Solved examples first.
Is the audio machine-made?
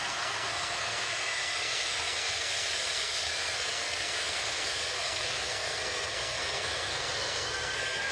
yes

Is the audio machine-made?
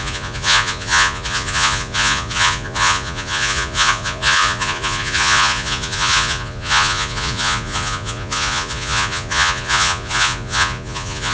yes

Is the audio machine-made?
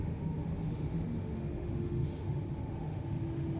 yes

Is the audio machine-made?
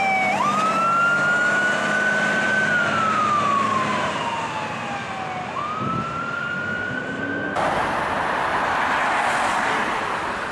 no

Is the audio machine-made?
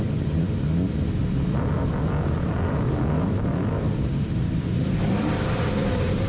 yes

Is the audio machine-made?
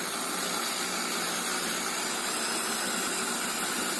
no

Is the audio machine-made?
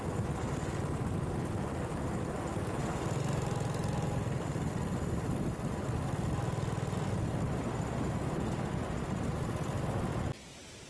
no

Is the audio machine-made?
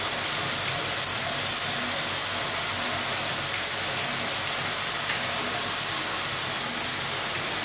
no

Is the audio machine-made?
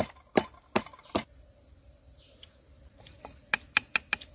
no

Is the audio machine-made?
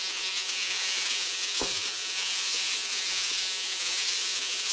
yes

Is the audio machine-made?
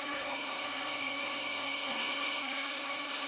yes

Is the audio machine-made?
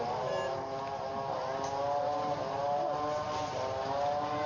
no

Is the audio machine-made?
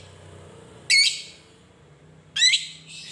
no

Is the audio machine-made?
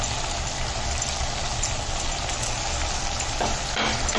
no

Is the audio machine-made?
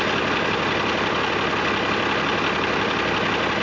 no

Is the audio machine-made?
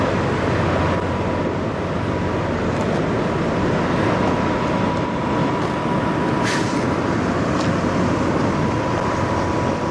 no